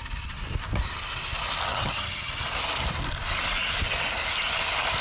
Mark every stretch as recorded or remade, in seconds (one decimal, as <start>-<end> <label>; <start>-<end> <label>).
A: 0.0-1.7 recorded; 1.7-2.3 remade; 2.3-5.0 recorded